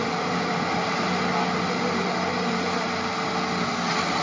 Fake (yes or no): no